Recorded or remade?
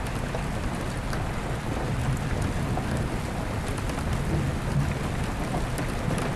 recorded